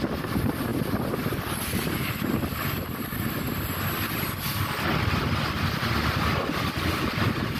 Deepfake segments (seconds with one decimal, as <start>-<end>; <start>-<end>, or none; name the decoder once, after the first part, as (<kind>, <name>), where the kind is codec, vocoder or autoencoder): none